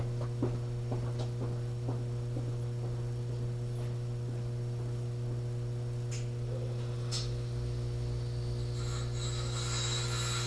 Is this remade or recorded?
recorded